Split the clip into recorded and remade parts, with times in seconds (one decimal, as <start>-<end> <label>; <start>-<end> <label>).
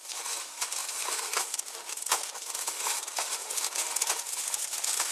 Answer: 0.0-5.1 remade